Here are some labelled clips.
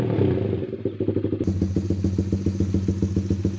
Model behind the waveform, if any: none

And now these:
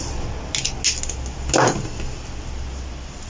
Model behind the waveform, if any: none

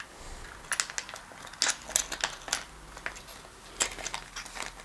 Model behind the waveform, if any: none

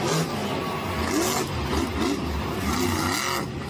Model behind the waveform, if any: none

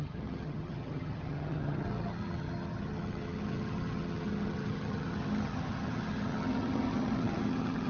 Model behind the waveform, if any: vocoder, HiFi-GAN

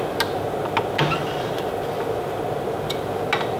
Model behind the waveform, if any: none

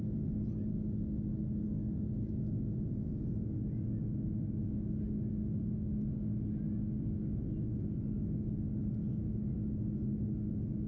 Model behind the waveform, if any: none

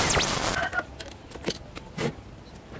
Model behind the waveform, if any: none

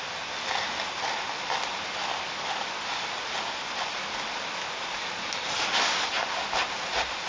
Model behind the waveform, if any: none